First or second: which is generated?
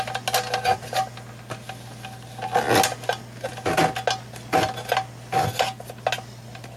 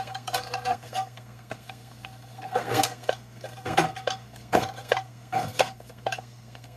second